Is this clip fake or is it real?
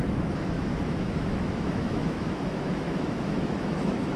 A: fake